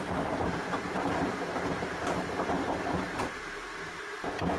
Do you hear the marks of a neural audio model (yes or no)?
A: yes